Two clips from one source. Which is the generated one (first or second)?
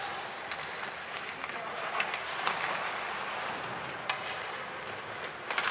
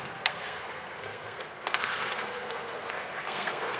second